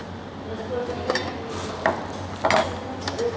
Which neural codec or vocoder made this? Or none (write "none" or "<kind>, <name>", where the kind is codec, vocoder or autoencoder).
none